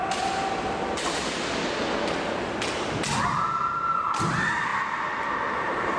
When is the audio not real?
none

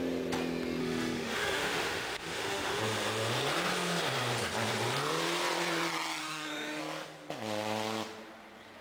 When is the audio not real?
0.8-2.8 (autoencoder, DAC-VAE); 6.2-6.8

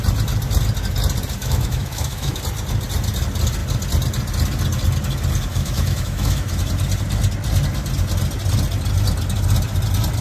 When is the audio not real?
1.4-2.4 (autoencoder, DAC-VAE); 5.5-6.6

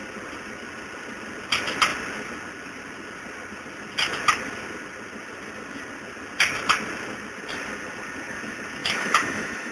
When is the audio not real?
8.8-9.7 (autoencoder, DAC-VAE)

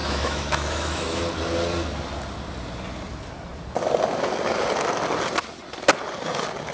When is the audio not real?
0.0-1.2 (autoencoder, DAC-VAE)